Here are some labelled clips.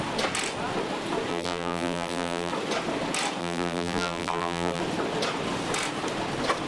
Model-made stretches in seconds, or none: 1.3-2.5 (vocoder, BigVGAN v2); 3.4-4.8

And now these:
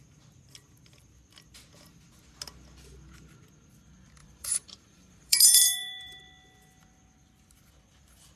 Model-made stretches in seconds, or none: 4.2-6.2 (vocoder, BigVGAN v2)

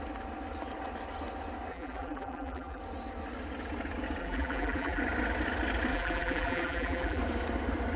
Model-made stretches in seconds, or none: 1.7-2.8 (vocoder, BigVGAN v2); 4.2-5.0; 5.9-7.2

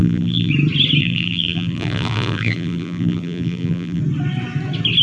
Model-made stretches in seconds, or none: 0.0-0.5 (vocoder, BigVGAN v2); 1.0-4.0

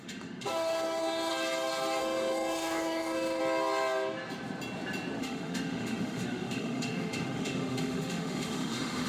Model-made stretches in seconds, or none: 0.0-1.3 (autoencoder, DAC-VAE); 2.0-3.4; 5.2-9.1

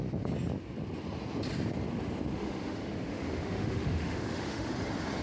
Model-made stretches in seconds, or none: 2.3-4.7 (autoencoder, DAC-VAE)